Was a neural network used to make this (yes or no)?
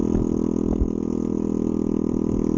no